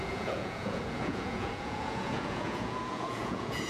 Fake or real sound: fake